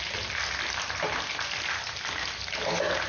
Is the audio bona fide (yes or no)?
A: yes